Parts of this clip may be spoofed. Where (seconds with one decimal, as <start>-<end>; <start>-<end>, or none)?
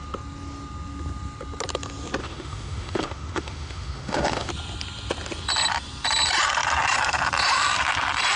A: 2.2-4.5